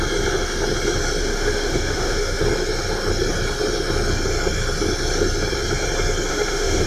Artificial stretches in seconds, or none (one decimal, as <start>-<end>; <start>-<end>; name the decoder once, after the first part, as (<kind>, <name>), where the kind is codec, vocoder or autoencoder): 1.2-2.4 (autoencoder, DAC-VAE); 6.3-6.9